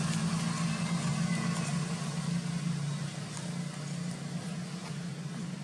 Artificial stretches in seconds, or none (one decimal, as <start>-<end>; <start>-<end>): none